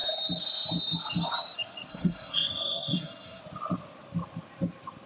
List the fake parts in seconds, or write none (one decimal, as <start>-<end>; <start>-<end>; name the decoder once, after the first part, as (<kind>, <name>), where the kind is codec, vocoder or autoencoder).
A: 1.9-3.4 (codec, SNAC)